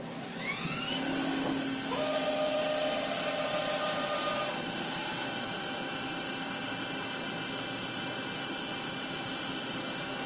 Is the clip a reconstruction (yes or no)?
no